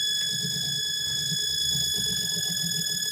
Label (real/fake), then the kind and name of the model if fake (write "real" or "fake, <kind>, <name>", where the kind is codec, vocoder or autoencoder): real